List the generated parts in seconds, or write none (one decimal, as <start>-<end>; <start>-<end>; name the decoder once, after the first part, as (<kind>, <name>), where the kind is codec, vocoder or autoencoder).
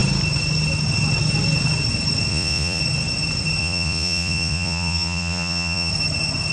2.3-2.8 (vocoder, Vocos); 3.6-5.9